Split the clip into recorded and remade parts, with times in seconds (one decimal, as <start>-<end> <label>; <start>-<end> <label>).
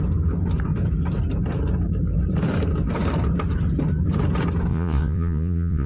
0.0-4.7 recorded; 4.7-5.9 remade